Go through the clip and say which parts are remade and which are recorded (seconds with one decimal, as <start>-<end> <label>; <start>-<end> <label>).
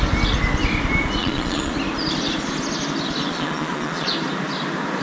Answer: 0.0-1.2 recorded; 1.2-1.7 remade; 1.7-3.3 recorded; 3.3-4.1 remade; 4.1-5.0 recorded